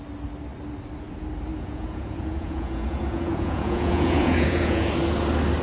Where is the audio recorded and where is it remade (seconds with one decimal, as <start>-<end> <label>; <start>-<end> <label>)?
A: 0.0-1.5 recorded; 1.5-4.9 remade; 4.9-5.6 recorded